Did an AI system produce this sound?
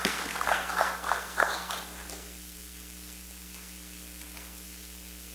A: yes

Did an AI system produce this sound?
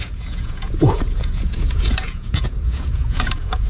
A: yes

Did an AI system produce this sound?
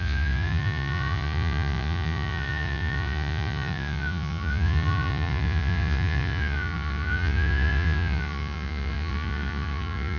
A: yes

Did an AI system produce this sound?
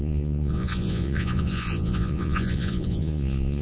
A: yes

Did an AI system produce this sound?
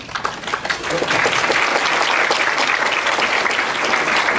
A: no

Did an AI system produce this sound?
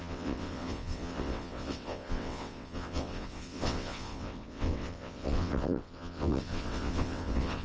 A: yes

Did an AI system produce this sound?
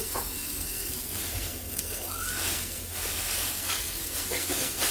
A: yes